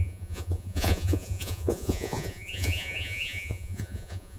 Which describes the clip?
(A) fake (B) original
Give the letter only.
A